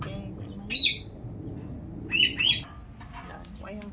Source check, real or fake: real